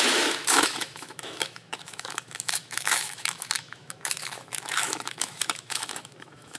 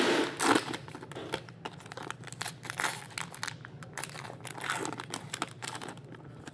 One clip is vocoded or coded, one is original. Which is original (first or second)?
second